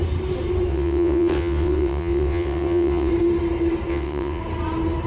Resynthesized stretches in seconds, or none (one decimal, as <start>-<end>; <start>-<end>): 0.7-3.1; 3.9-4.4